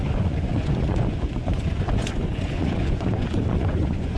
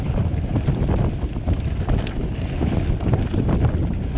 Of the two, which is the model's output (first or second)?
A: first